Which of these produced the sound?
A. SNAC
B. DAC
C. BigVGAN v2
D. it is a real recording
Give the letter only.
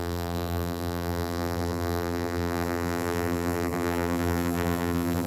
C